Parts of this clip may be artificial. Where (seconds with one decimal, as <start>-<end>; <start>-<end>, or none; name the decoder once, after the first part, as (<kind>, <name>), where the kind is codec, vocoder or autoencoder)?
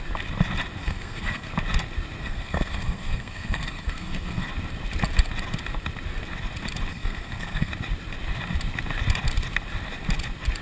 0.8-1.5 (codec, SNAC); 2.2-4.5; 6.9-7.7